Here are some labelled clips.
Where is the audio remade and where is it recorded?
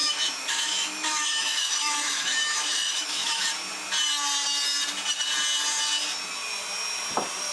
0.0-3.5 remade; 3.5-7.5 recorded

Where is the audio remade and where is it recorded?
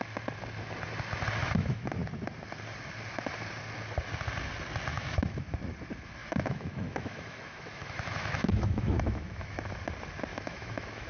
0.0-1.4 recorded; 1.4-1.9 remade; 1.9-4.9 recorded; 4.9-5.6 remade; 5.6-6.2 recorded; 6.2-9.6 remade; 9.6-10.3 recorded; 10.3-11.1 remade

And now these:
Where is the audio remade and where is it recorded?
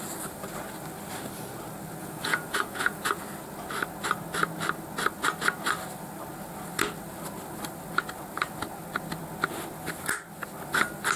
0.0-2.0 recorded; 2.0-3.2 remade; 3.2-11.2 recorded